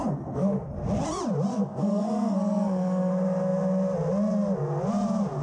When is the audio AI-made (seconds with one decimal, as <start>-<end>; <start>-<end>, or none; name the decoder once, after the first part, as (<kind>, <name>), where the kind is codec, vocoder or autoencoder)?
0.0-0.7 (codec, SNAC); 1.5-3.1